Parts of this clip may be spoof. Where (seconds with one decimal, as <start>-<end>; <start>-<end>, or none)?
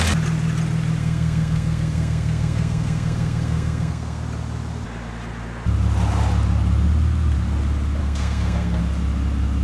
1.0-4.2; 8.0-8.8